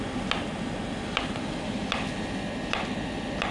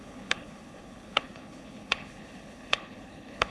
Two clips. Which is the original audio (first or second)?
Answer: first